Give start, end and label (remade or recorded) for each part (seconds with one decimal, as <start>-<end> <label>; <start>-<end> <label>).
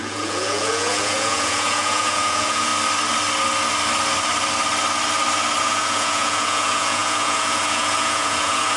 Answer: 0.0-2.7 remade; 2.7-5.6 recorded; 5.6-8.8 remade